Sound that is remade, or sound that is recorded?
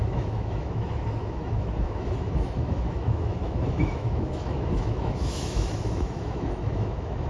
remade